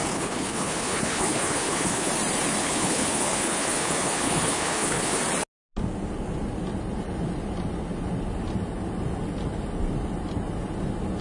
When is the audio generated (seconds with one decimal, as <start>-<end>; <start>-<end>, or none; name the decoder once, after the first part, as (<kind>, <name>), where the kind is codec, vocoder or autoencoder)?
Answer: 0.0-2.1 (codec, HILCodec); 2.6-5.2